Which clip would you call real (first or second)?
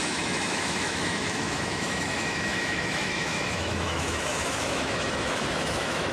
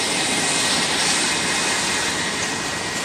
second